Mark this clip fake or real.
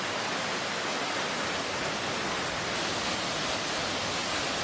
real